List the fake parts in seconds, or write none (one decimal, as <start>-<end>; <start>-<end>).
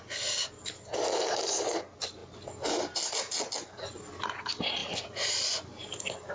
4.8-6.3